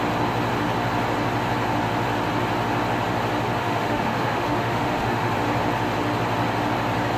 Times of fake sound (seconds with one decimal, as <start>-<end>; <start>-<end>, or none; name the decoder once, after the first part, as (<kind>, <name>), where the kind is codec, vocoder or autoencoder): 3.6-5.3 (autoencoder, DAC-VAE)